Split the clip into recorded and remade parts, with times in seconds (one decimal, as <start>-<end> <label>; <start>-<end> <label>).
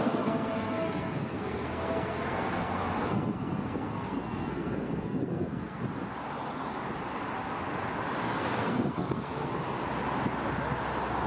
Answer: 0.0-5.8 remade; 5.8-8.2 recorded; 8.2-9.5 remade; 9.5-11.3 recorded